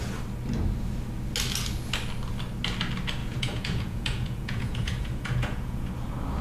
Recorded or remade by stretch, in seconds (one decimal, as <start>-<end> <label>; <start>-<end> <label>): 0.0-3.2 recorded; 3.2-5.9 remade; 5.9-6.4 recorded